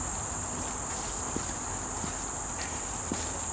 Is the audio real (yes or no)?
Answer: yes